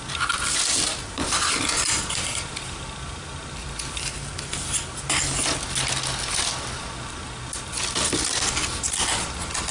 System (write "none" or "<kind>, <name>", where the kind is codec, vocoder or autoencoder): none